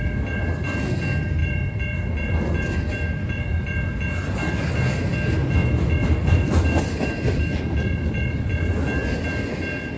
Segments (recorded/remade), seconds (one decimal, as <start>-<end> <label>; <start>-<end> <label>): 0.0-1.4 recorded; 1.4-3.8 remade; 3.8-5.6 recorded; 5.6-8.4 remade; 8.4-10.0 recorded